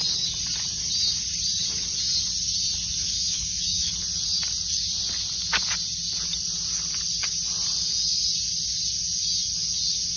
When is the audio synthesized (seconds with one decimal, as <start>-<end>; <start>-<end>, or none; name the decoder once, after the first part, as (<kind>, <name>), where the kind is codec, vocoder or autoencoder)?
3.0-3.9 (autoencoder, DAC-VAE)